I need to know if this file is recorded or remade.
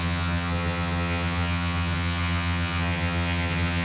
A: remade